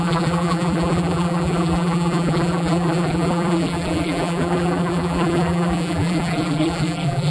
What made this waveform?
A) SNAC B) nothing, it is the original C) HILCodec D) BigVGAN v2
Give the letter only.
D